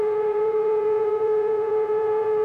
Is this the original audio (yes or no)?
no